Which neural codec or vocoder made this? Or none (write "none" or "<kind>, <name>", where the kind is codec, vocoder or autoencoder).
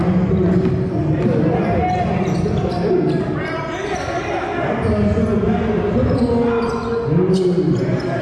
none